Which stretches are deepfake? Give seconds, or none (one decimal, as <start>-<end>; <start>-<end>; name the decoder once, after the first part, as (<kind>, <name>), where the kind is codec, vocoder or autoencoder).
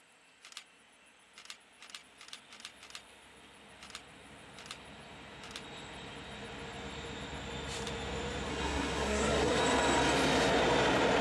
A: 8.5-9.6 (codec, SNAC)